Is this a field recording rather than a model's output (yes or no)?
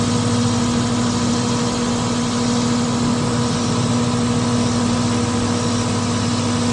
yes